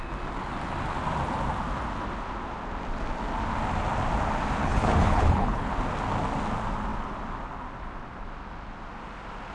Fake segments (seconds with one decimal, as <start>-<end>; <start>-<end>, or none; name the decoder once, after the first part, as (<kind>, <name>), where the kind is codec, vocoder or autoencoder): 4.6-5.7 (codec, HILCodec)